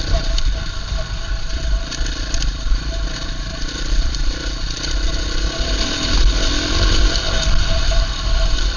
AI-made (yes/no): yes